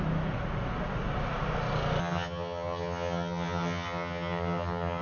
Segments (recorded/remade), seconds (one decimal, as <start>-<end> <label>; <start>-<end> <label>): 0.0-2.0 recorded; 2.0-5.0 remade